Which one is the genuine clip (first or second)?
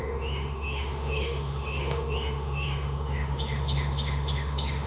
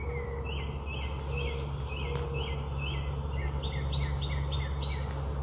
second